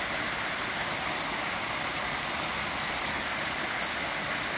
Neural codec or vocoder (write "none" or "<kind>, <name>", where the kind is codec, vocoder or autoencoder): none